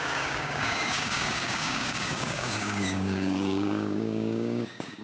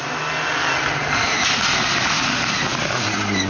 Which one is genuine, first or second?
second